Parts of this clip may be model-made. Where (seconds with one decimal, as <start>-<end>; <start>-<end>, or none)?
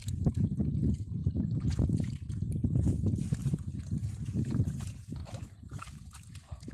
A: 0.0-0.7; 1.2-2.9; 3.4-6.7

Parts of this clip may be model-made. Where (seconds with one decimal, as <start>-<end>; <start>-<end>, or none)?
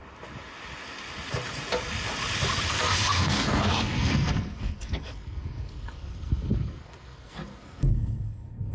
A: 2.7-8.7